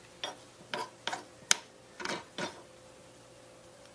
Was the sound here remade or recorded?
recorded